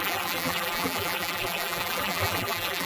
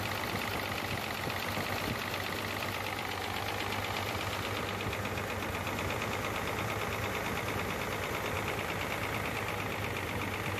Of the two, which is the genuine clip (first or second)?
second